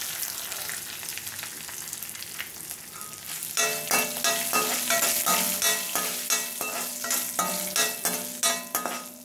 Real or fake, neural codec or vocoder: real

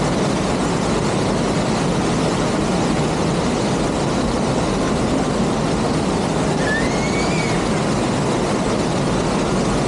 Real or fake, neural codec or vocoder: real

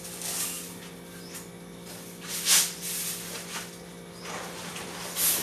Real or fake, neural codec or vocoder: real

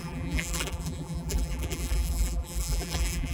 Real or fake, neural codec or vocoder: fake, vocoder, BigVGAN v2